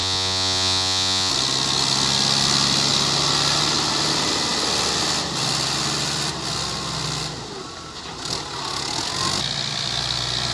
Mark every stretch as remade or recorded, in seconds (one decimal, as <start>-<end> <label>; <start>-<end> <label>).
0.0-1.3 remade; 1.3-10.5 recorded

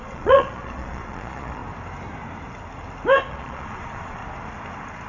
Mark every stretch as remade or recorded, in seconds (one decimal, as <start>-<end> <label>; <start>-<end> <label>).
0.0-1.6 remade; 1.6-3.3 recorded; 3.3-4.2 remade; 4.2-5.1 recorded